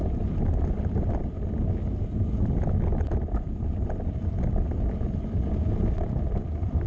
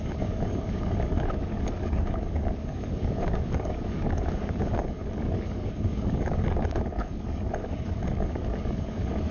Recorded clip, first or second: first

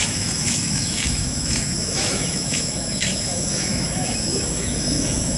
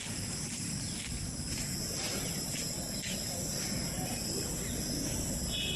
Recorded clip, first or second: second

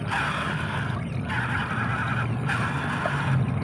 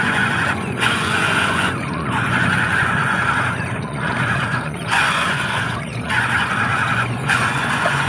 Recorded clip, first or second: first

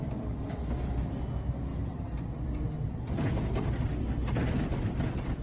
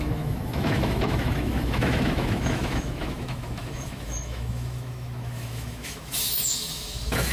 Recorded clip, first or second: first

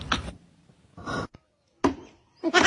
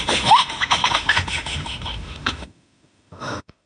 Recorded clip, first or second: first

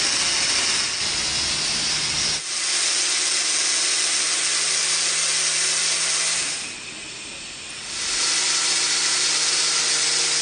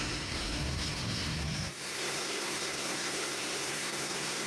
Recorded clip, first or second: first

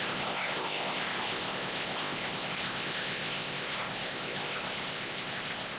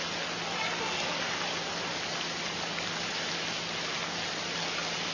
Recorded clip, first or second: second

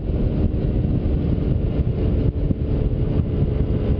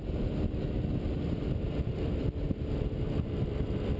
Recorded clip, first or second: first